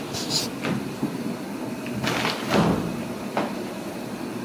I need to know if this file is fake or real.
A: real